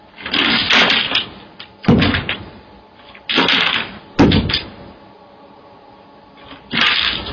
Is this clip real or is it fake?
real